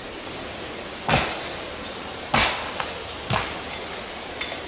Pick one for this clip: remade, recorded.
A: recorded